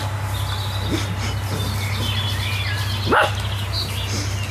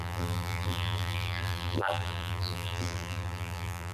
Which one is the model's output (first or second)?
second